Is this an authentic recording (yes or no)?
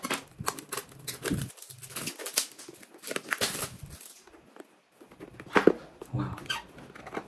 yes